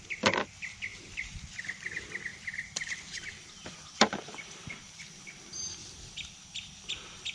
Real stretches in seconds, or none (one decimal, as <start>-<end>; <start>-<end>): 0.0-2.3; 5.0-5.8; 6.5-7.3

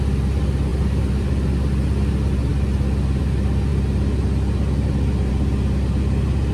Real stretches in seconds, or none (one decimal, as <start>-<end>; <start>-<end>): 0.0-0.7; 1.3-6.5

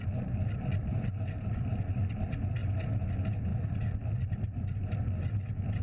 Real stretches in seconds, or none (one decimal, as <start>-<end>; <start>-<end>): 0.0-0.9; 1.5-5.8

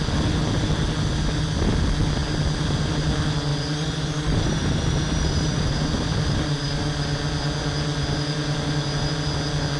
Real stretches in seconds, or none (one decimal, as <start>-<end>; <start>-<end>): 0.0-3.5; 6.7-7.9; 9.1-9.8

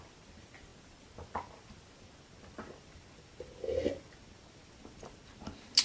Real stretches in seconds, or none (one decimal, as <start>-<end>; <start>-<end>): 0.0-5.8

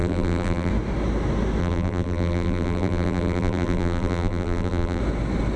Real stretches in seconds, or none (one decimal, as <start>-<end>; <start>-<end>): 0.7-1.6; 5.0-5.6

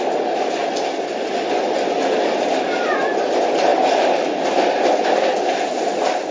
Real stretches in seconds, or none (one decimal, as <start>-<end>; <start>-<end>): 0.0-6.3

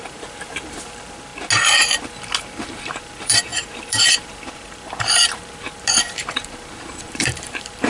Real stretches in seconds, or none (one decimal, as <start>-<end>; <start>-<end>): 1.3-2.4